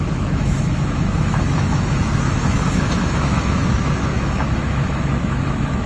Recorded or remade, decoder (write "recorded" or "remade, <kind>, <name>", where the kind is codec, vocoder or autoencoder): remade, autoencoder, DAC-VAE